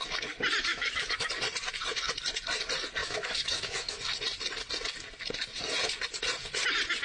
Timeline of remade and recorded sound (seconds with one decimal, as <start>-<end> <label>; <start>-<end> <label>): 0.0-0.7 recorded; 0.7-1.3 remade; 1.3-3.0 recorded; 3.0-4.0 remade; 4.0-7.0 recorded